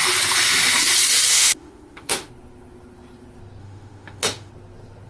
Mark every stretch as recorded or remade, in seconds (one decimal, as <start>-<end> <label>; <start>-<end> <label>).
0.0-1.3 recorded; 1.3-2.3 remade; 2.3-3.6 recorded; 3.6-4.5 remade; 4.5-5.1 recorded

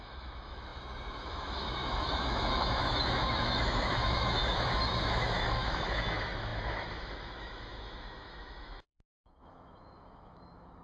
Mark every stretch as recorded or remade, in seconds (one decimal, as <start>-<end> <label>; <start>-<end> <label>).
0.0-10.8 remade

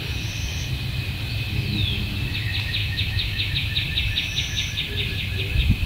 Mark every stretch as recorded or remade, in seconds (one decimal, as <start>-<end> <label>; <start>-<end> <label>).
0.0-2.8 recorded; 2.8-3.5 remade; 3.5-5.9 recorded

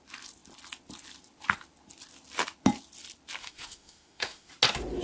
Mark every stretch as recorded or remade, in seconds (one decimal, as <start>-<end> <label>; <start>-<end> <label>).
0.0-3.4 recorded; 3.4-4.5 remade; 4.5-5.0 recorded

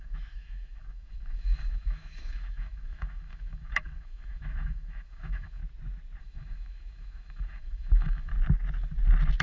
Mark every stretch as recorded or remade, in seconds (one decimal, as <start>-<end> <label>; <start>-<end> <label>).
0.0-5.6 remade; 5.6-6.2 recorded; 6.2-8.3 remade; 8.3-9.4 recorded

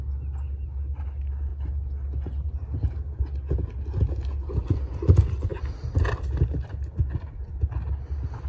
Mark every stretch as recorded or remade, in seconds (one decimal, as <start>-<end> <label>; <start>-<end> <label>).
0.0-8.5 recorded